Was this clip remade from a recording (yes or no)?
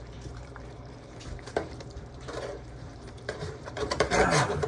yes